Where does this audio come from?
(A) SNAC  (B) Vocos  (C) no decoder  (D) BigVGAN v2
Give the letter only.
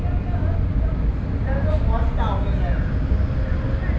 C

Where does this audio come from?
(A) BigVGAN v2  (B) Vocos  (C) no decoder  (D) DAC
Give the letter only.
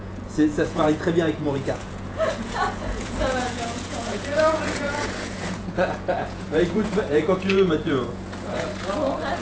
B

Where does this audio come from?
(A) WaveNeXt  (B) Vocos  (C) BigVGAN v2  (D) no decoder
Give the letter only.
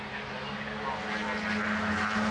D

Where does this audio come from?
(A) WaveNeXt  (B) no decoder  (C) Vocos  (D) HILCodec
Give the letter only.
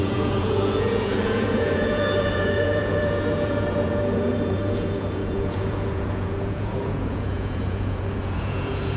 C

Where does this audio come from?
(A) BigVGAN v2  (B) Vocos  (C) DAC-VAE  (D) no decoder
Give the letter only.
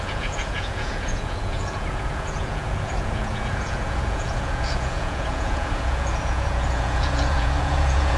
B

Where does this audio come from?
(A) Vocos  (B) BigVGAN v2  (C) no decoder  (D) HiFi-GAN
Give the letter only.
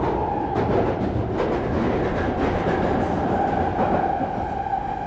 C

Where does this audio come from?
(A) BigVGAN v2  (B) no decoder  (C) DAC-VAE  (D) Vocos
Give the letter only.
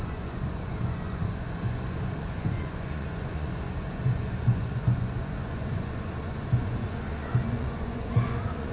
D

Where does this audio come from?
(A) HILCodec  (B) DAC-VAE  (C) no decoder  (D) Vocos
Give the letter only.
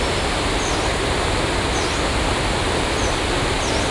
C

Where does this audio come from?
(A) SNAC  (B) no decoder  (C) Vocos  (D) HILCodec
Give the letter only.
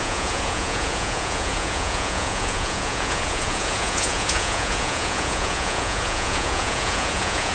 C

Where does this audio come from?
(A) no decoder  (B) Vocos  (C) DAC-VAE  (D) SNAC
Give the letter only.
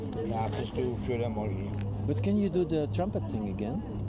A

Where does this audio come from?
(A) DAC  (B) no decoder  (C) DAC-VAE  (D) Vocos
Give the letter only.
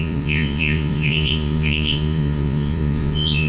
D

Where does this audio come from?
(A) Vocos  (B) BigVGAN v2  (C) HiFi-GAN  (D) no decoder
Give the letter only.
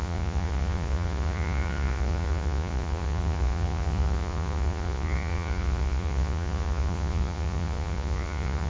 A